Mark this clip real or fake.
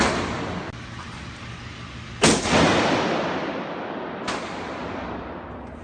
real